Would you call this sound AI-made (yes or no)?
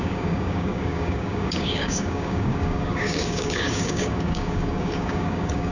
yes